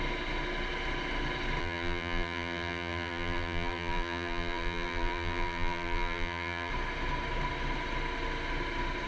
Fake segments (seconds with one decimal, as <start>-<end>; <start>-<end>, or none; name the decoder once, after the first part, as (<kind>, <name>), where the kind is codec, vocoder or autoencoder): 1.6-6.7 (vocoder, BigVGAN v2)